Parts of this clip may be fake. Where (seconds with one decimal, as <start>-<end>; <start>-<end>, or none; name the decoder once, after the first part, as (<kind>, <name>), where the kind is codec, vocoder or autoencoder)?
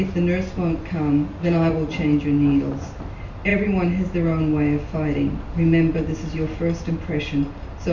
none